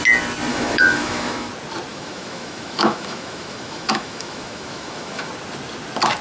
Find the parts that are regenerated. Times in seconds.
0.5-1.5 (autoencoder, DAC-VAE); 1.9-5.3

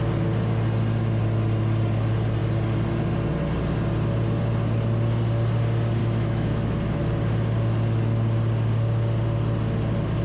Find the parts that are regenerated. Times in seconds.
6.0-7.0 (autoencoder, DAC-VAE)

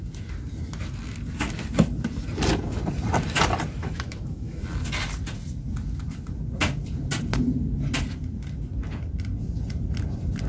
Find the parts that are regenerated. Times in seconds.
3.8-4.6 (autoencoder, DAC-VAE)

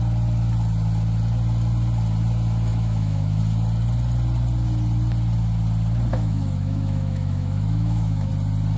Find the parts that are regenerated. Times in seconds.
2.7-3.4 (autoencoder, DAC-VAE); 6.1-8.3